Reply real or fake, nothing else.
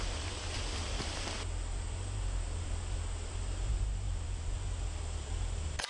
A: real